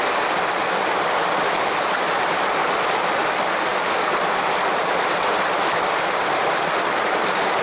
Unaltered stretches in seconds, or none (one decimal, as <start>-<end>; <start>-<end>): 0.0-7.6